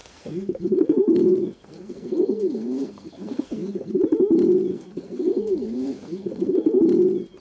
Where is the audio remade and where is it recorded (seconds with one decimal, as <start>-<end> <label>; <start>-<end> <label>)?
0.0-3.9 remade; 3.9-4.7 recorded; 4.7-6.8 remade; 6.8-7.4 recorded